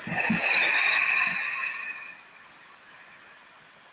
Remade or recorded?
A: recorded